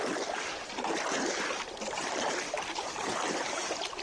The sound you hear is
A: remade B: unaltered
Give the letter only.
B